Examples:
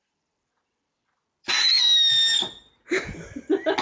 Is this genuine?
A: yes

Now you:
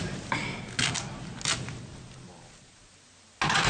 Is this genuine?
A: yes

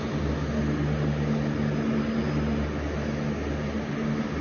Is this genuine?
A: yes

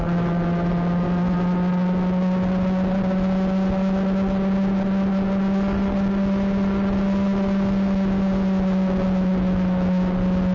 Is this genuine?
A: yes